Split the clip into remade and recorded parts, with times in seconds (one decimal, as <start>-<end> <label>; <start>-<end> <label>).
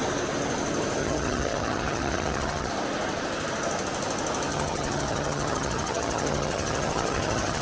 0.0-1.0 recorded; 1.0-2.7 remade; 2.7-4.5 recorded; 4.5-7.6 remade